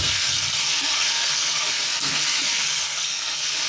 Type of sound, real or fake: fake